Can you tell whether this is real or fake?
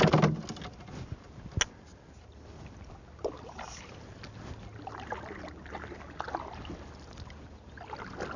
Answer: real